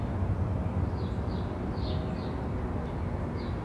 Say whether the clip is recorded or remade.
recorded